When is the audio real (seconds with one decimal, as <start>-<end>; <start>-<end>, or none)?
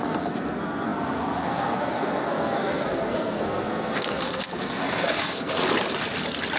5.6-6.6